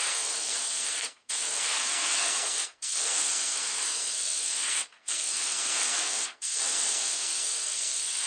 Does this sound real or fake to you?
fake